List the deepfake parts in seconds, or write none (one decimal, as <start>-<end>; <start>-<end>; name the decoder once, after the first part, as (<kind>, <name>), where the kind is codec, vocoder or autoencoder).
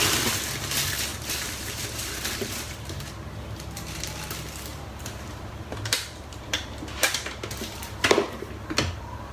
1.1-3.1 (vocoder, BigVGAN v2); 4.7-7.9